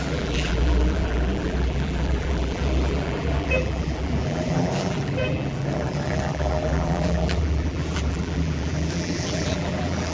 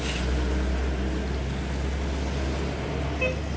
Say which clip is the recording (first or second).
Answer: second